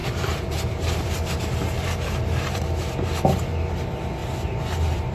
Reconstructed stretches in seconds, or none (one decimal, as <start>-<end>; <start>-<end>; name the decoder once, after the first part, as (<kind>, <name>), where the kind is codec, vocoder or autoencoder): 0.0-3.1 (vocoder, BigVGAN v2); 4.2-5.1